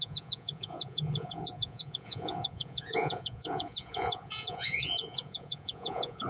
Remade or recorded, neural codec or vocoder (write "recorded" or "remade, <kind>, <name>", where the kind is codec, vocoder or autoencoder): remade, vocoder, Vocos